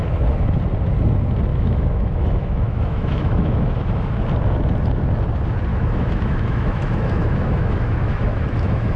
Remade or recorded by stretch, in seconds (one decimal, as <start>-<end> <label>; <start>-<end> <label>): 0.0-1.5 recorded; 1.5-4.2 remade; 4.2-5.7 recorded; 5.7-9.0 remade